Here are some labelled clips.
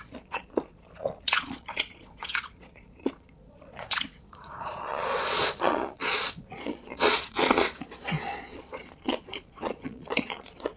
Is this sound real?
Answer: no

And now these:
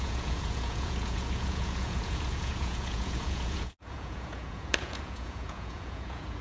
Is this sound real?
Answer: no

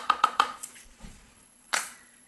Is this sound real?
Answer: no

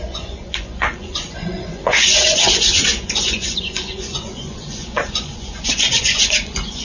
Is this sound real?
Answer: no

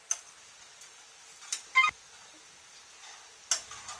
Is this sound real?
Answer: yes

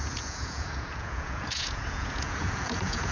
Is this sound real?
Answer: no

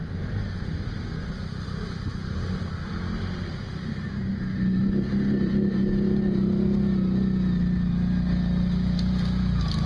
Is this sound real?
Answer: yes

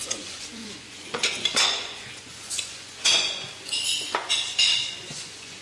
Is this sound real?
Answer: no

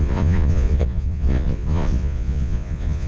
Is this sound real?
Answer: no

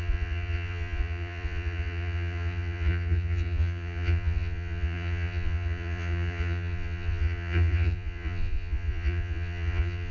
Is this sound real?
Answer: no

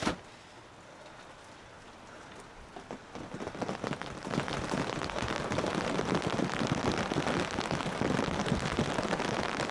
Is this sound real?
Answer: yes